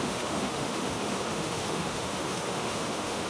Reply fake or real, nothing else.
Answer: fake